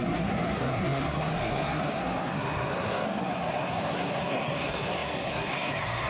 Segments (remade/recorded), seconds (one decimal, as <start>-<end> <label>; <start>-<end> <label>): 0.0-6.1 remade

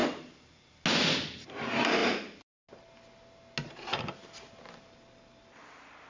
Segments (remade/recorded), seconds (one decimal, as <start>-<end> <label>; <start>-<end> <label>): 0.0-6.1 recorded

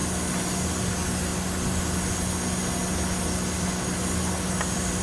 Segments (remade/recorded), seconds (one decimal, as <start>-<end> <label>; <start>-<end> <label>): 0.0-5.0 recorded